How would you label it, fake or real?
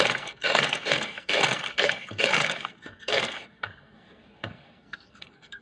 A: fake